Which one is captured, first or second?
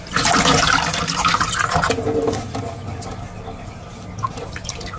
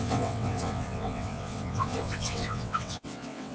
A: first